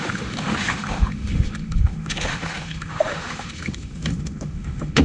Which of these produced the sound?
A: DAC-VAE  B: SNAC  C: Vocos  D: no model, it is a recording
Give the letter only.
A